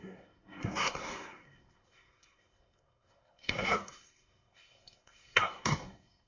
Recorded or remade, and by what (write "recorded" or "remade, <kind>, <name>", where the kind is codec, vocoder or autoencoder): remade, codec, SNAC